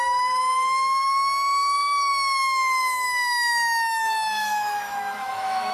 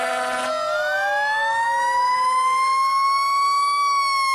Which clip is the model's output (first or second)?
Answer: first